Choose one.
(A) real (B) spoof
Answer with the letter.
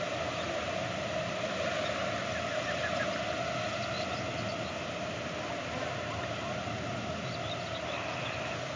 A